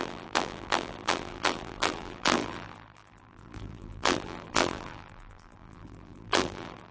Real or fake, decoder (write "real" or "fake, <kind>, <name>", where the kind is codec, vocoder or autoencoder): fake, vocoder, BigVGAN v2